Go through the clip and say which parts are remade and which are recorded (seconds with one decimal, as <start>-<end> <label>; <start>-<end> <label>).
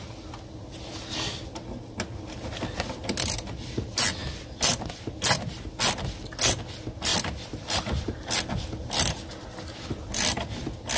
0.0-11.0 recorded